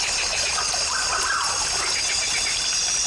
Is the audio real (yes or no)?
yes